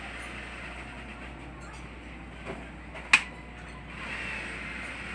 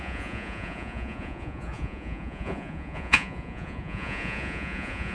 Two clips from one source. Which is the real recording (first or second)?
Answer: first